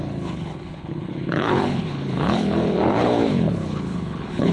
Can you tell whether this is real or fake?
fake